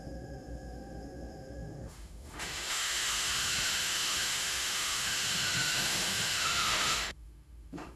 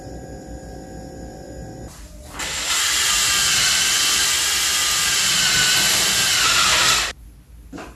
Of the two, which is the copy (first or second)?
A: first